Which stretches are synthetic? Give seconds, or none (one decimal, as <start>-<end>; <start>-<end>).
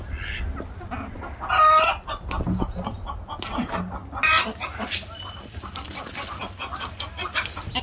none